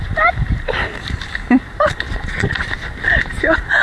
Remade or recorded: remade